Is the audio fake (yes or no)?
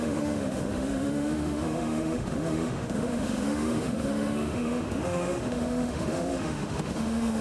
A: yes